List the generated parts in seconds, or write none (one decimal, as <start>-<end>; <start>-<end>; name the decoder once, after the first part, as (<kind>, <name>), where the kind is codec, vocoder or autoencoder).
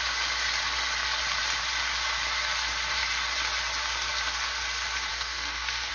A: 5.1-5.9 (codec, SNAC)